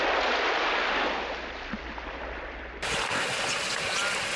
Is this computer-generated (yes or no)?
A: no